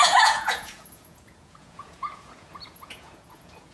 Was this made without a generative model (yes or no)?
no